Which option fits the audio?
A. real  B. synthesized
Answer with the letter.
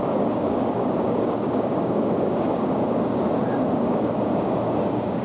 B